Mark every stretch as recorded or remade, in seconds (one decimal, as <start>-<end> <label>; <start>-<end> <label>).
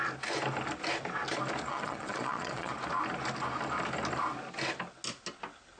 0.0-1.7 recorded; 1.7-2.7 remade; 2.7-5.8 recorded